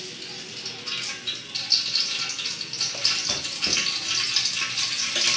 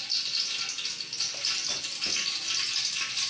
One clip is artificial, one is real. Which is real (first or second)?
first